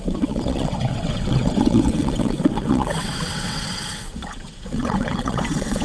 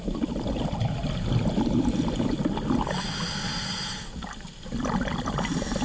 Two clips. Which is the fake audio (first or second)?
first